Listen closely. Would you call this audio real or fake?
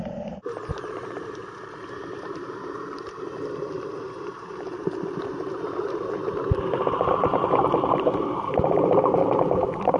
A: fake